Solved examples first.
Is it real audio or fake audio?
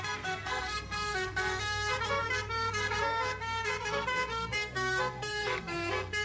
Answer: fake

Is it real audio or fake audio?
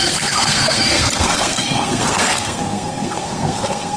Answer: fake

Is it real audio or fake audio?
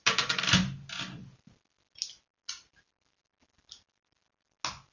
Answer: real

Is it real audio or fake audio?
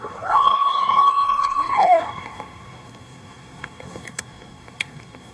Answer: fake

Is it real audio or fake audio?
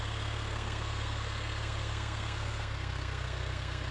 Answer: fake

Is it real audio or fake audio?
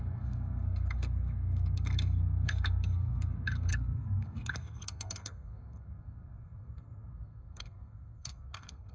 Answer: fake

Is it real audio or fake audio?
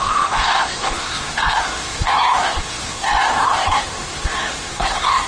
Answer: fake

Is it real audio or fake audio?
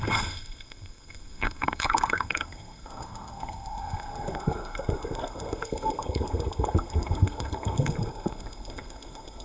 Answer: fake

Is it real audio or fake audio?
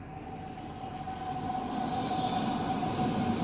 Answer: real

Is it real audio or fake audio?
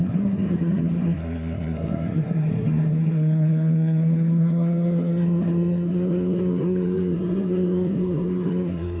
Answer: fake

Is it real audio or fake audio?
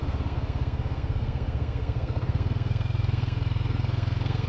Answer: fake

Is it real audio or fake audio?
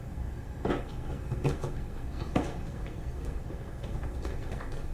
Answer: fake